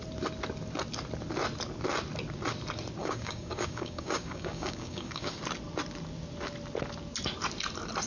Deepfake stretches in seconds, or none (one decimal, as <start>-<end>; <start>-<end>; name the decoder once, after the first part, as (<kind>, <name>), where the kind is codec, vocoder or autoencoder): 3.0-5.4 (codec, DAC)